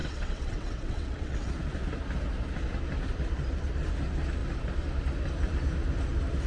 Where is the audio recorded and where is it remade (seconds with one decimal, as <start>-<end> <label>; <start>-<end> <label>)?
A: 0.0-1.5 remade; 1.5-6.5 recorded